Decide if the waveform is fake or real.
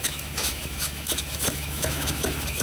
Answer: fake